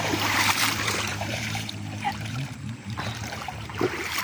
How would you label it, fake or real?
fake